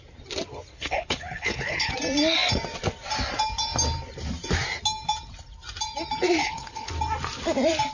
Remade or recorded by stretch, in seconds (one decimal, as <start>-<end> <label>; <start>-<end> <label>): 0.0-0.7 recorded; 0.7-1.9 remade; 1.9-6.4 recorded; 6.4-6.9 remade; 6.9-7.9 recorded